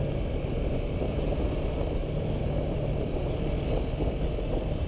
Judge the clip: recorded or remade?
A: recorded